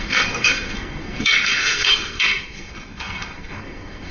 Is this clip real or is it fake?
fake